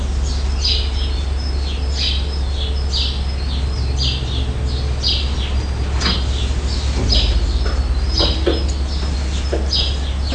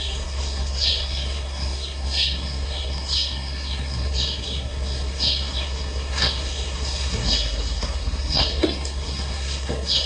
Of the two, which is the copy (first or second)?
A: second